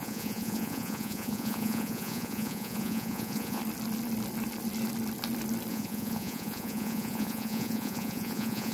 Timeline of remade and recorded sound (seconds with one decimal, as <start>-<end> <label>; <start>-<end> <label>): 0.0-3.6 remade; 3.6-5.7 recorded; 5.7-8.7 remade